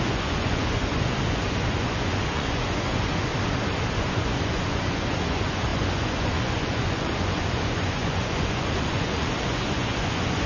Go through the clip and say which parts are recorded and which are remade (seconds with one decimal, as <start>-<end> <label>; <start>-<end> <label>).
0.0-3.3 remade; 3.3-4.0 recorded; 4.0-10.5 remade